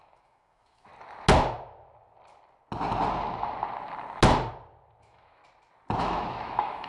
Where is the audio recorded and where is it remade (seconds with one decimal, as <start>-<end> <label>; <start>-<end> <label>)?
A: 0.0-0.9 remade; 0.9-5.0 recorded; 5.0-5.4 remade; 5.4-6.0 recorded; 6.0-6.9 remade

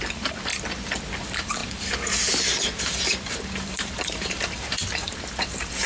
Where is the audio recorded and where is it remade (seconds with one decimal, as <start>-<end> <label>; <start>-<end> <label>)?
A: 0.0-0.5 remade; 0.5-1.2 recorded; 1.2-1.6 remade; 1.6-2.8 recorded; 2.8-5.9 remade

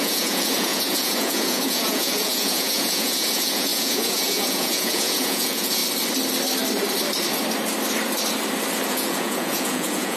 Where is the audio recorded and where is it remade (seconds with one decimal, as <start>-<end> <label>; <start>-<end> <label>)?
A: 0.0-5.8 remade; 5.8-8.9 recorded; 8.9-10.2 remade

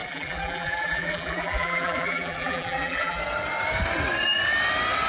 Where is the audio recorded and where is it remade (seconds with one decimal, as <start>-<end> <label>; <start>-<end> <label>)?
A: 0.0-3.2 remade; 3.2-5.1 recorded